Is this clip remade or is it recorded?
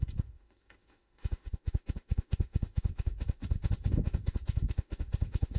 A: remade